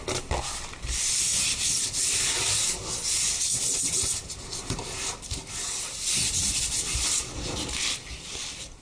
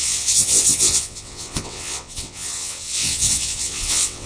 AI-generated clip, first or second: second